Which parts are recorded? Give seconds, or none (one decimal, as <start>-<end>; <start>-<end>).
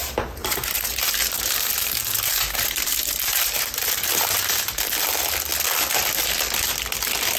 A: 0.0-0.4; 4.8-7.4